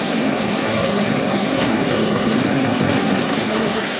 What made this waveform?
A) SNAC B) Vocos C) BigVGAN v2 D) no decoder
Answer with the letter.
A